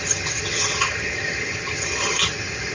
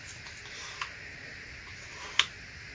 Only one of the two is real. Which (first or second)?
second